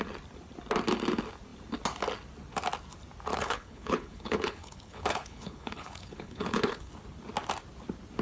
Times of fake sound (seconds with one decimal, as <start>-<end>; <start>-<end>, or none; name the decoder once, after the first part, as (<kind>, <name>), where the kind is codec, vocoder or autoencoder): 3.3-6.9 (codec, HILCodec)